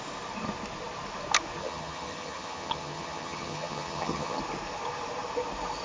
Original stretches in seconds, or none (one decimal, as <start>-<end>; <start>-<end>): 0.0-1.6; 4.4-5.8